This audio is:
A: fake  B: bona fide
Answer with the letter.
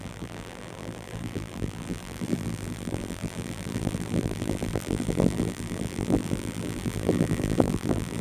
A